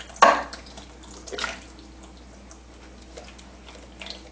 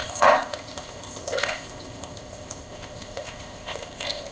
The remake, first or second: second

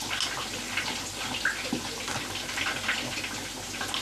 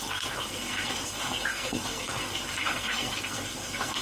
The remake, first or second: second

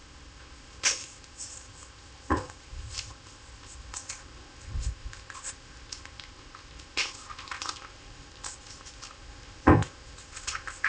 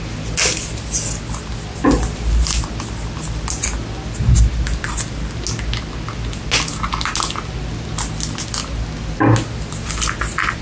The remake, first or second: first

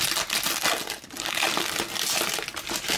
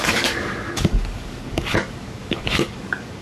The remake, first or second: second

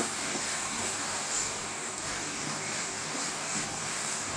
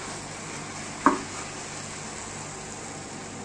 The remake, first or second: first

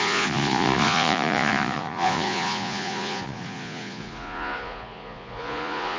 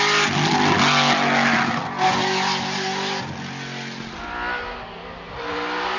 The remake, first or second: first